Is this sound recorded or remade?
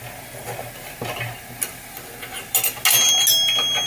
recorded